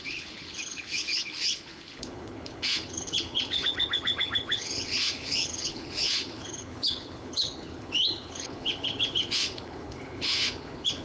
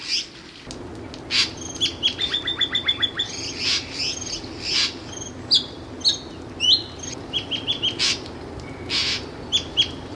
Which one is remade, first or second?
first